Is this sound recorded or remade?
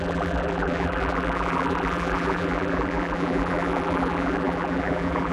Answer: remade